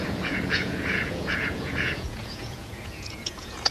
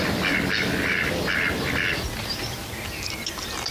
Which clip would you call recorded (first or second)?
second